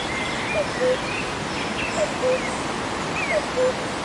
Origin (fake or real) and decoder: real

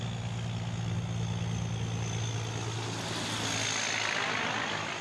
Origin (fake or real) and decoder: real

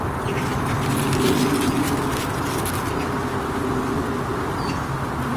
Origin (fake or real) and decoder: real